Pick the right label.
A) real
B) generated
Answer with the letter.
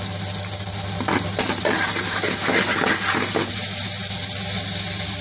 A